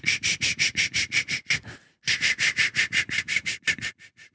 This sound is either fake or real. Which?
real